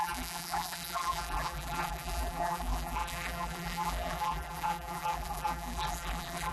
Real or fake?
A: fake